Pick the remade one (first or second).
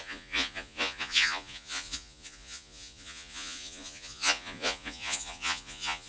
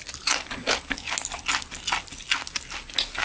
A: first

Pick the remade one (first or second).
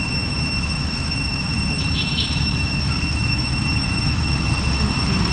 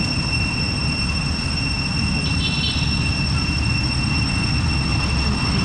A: first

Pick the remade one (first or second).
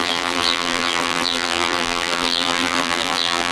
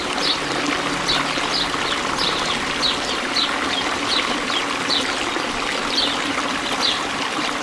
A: first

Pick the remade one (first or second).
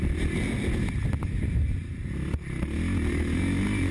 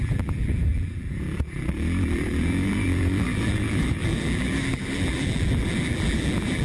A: second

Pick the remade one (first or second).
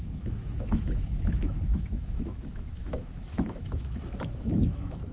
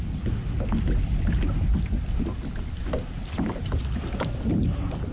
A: first